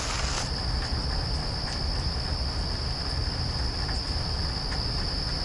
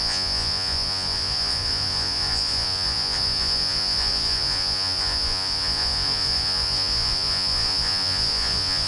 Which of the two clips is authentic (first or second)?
first